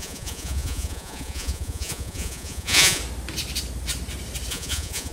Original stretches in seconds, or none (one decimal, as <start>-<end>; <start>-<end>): 3.0-4.5